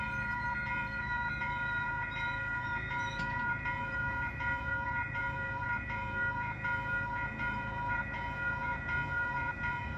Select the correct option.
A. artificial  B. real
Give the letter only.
A